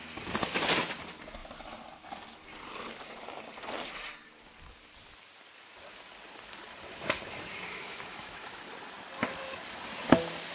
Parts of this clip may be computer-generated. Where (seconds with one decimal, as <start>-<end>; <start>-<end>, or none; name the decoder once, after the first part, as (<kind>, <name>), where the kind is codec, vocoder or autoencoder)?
7.7-8.6 (autoencoder, DAC-VAE)